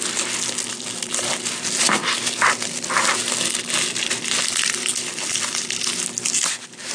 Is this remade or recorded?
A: recorded